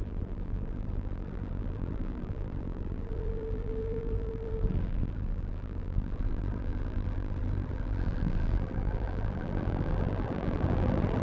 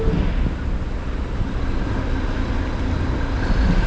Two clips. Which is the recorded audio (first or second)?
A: second